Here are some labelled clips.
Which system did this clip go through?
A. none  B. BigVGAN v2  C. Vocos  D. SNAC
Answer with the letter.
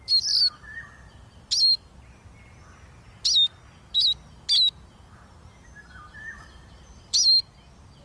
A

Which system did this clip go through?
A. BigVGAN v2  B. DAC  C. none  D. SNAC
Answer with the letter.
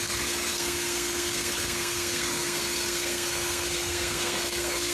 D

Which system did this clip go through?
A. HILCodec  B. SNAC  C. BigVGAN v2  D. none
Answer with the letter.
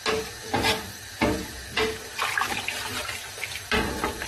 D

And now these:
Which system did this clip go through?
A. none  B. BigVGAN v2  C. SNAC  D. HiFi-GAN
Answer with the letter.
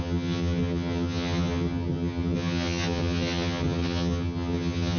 D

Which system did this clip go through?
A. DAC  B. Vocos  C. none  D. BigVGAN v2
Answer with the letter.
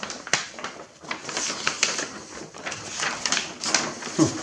C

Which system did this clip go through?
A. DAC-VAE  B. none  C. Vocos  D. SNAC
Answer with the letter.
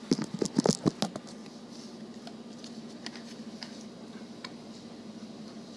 B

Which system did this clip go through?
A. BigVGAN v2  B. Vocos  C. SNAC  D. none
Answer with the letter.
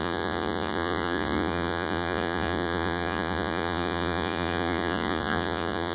B